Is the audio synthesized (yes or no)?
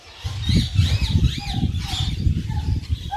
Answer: no